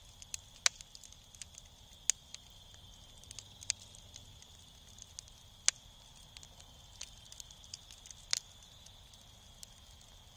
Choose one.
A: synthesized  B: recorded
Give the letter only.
B